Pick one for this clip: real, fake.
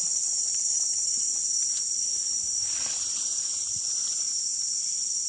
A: real